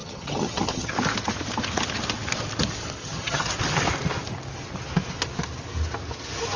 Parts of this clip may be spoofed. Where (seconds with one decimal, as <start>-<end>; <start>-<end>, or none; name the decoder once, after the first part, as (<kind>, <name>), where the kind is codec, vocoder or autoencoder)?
0.0-0.9 (vocoder, HiFi-GAN); 3.0-3.5